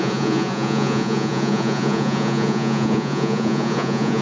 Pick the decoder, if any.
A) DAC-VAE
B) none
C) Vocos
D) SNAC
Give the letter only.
C